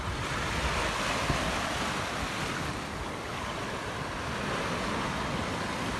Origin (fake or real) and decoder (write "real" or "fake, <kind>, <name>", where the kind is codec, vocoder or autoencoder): real